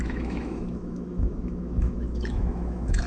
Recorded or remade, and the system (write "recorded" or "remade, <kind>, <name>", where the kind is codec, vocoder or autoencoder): remade, autoencoder, DAC-VAE